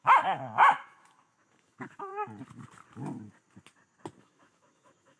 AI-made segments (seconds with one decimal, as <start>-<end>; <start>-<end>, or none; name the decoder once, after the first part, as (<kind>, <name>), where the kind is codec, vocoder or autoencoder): 0.0-2.1 (autoencoder, DAC-VAE); 4.2-5.2